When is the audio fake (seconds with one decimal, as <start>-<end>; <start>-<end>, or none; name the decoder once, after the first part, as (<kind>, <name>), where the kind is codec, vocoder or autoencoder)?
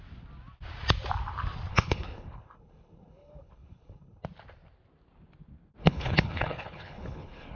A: 1.7-4.2 (codec, HILCodec); 5.8-7.6